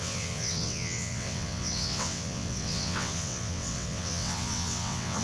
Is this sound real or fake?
fake